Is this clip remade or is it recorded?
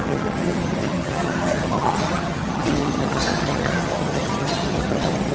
remade